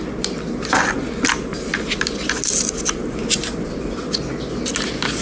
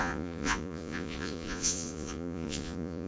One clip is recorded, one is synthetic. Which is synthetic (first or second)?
second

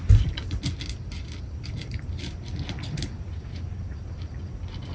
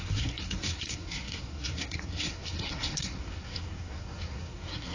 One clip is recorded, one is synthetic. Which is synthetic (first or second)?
second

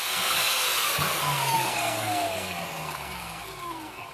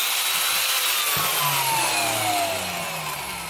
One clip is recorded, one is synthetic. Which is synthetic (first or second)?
first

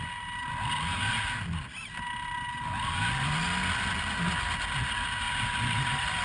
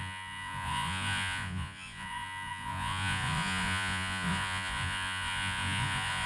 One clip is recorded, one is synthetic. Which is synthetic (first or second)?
second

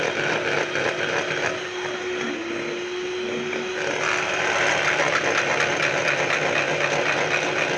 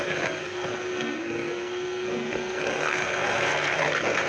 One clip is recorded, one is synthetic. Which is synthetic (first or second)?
second